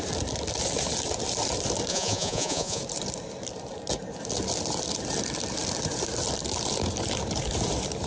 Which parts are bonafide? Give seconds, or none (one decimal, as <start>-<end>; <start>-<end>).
0.0-1.9; 2.8-8.1